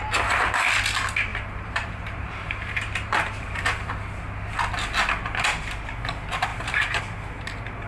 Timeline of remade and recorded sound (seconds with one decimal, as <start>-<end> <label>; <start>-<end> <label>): 0.0-1.3 recorded; 1.3-3.9 remade; 3.9-6.5 recorded; 6.5-7.0 remade; 7.0-7.9 recorded